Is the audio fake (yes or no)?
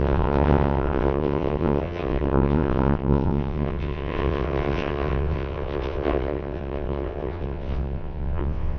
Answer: yes